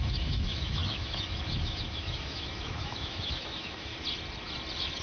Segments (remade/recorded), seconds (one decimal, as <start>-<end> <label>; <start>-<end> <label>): 0.0-3.9 remade; 3.9-5.0 recorded